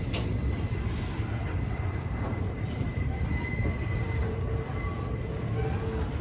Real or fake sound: fake